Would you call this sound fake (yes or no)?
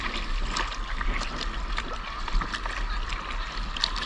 no